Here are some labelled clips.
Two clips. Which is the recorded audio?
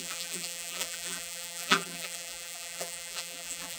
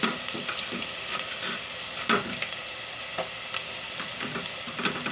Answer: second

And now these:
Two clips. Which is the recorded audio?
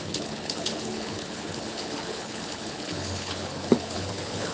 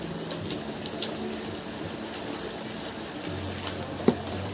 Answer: second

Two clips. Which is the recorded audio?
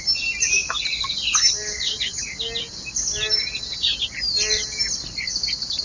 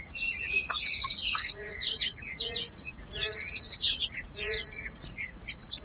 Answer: first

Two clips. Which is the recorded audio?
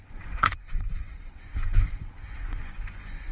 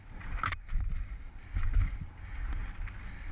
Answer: second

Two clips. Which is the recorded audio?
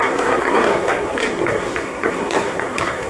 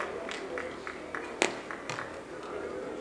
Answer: second